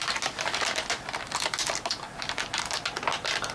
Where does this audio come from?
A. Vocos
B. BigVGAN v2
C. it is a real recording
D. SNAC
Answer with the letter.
C